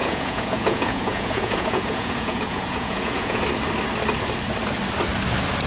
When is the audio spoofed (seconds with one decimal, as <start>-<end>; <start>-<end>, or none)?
0.0-3.4